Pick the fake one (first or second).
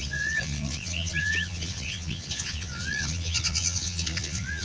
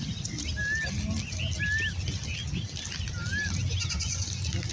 first